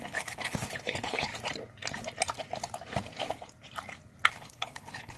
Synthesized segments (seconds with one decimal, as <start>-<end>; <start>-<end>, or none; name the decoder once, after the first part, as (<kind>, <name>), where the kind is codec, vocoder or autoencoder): 0.0-1.3 (codec, HILCodec); 4.3-5.2